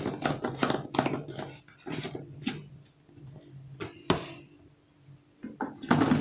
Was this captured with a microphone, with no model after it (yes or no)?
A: yes